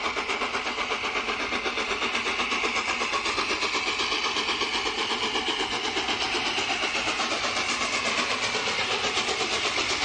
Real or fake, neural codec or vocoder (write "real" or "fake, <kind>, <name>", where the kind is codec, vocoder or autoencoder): real